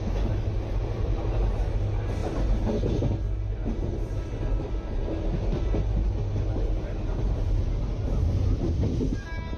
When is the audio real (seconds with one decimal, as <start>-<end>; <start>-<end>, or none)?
0.0-9.6